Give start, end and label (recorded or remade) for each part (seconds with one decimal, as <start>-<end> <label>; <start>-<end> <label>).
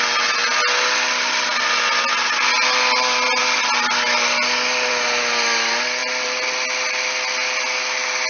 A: 0.0-8.3 recorded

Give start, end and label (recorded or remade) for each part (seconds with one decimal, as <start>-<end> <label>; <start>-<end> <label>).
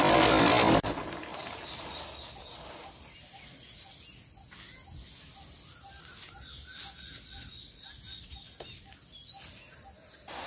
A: 0.0-10.5 recorded